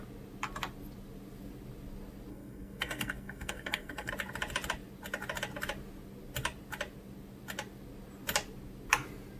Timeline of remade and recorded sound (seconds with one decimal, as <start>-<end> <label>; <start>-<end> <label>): 0.0-2.3 recorded; 2.3-4.1 remade; 4.1-9.4 recorded